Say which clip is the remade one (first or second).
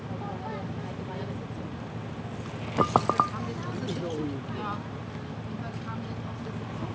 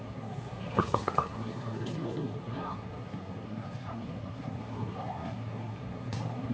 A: second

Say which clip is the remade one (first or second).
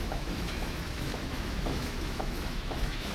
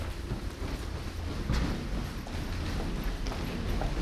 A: first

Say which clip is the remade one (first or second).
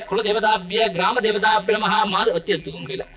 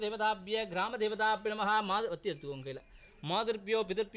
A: first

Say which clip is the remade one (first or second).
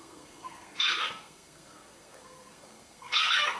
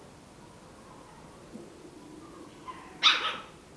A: first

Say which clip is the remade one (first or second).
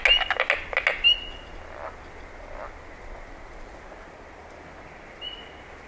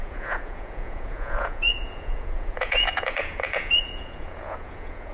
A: second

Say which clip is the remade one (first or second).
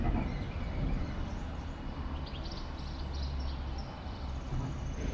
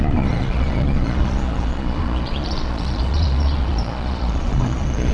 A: second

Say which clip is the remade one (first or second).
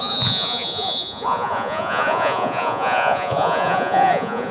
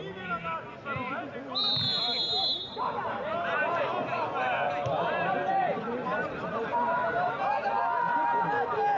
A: first